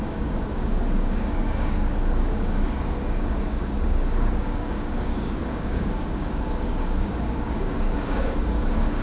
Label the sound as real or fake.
fake